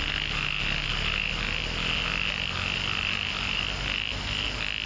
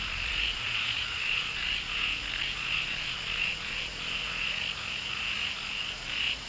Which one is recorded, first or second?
first